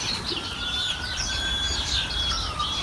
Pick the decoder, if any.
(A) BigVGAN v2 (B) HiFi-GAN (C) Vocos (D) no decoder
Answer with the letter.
A